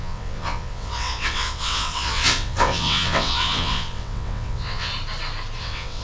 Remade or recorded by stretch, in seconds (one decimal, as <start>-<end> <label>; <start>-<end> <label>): 0.0-4.9 remade; 4.9-5.6 recorded; 5.6-6.0 remade